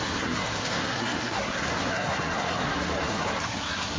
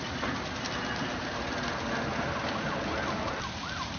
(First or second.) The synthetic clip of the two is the first